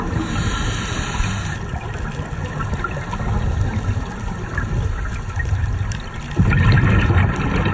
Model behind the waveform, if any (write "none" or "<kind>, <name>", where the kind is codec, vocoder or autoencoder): none